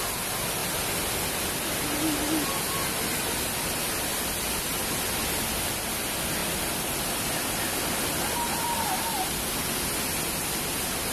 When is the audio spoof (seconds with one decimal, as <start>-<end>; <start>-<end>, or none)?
none